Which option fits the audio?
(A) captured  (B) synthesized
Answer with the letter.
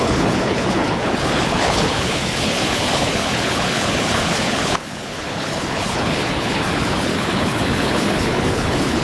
B